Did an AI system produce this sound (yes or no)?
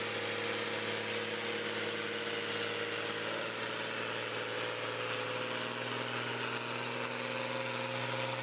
no